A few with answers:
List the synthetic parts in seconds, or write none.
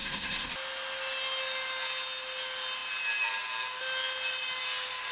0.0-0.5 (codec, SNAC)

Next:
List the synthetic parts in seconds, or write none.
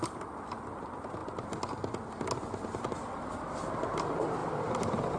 none